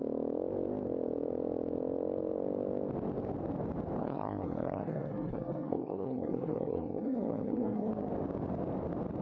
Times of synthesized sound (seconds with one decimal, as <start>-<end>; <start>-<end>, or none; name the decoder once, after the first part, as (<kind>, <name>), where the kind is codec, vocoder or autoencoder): 4.0-7.9 (codec, SNAC)